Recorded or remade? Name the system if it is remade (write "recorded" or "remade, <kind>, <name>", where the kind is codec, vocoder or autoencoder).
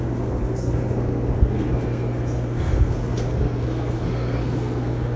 remade, codec, SNAC